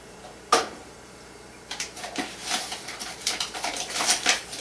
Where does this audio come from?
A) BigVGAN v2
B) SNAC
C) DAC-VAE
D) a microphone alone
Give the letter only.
A